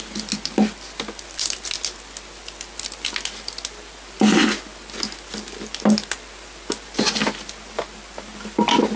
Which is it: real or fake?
real